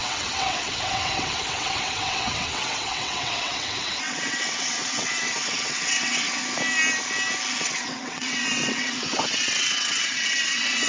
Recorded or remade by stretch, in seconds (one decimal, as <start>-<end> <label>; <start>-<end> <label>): 0.0-6.4 remade; 6.4-7.6 recorded; 7.6-10.9 remade